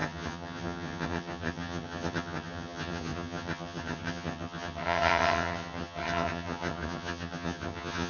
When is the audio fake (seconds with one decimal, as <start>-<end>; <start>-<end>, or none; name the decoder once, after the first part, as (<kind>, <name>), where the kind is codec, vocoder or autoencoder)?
0.0-8.1 (vocoder, HiFi-GAN)